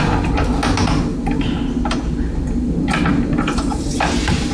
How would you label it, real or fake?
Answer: real